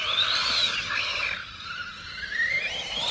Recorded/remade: recorded